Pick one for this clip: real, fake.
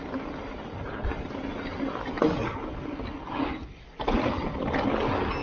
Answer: real